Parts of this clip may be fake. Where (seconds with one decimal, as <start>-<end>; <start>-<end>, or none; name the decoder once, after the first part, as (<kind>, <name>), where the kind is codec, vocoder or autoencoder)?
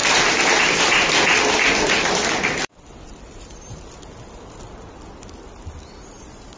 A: 0.0-6.6 (vocoder, BigVGAN v2)